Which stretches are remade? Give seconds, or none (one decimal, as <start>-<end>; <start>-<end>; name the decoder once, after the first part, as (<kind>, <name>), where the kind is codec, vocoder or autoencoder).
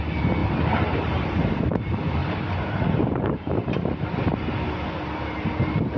0.4-1.2 (vocoder, BigVGAN v2); 2.2-4.0